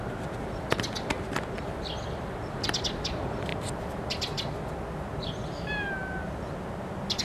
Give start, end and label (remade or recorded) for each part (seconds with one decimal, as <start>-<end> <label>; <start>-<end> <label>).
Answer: 0.0-7.2 recorded